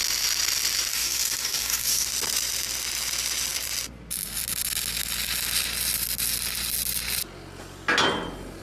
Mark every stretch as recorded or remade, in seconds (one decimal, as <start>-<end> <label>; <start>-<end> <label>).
0.0-0.9 recorded; 0.9-2.1 remade; 2.1-8.6 recorded